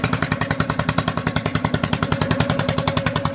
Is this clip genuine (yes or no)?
no